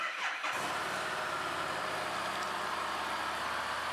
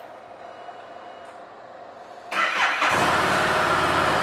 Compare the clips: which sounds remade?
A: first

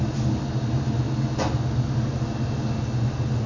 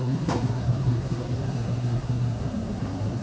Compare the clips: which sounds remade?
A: second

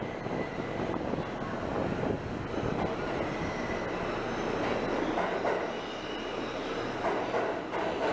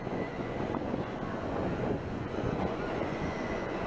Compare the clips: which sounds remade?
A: second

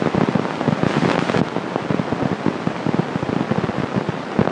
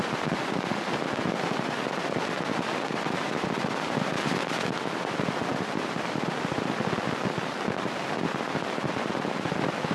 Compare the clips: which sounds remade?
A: second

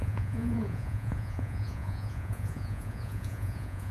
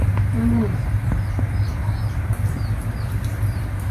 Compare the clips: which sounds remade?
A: first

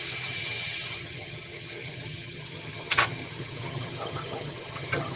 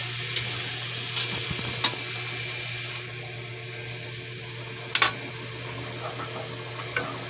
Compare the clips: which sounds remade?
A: first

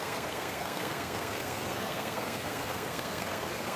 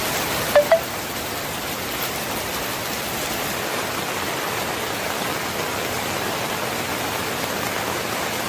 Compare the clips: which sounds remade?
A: first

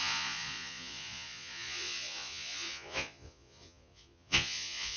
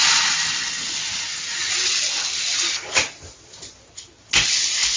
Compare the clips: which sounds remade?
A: first